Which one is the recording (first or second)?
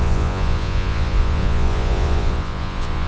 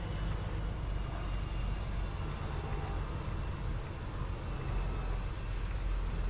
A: second